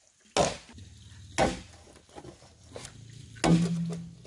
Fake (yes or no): no